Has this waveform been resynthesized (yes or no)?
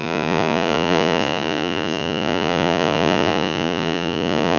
yes